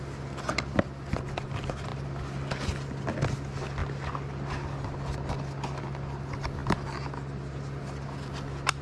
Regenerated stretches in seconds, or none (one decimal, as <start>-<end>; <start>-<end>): none